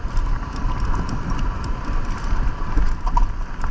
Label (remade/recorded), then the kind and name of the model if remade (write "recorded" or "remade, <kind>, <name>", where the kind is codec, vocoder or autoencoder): recorded